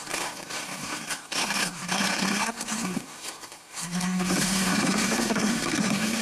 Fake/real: fake